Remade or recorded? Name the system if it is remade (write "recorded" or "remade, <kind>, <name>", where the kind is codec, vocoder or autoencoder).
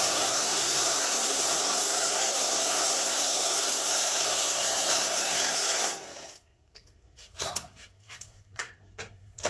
remade, codec, SNAC